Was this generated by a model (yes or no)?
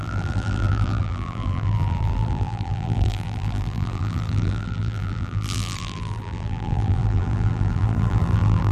yes